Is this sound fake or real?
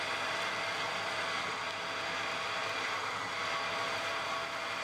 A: real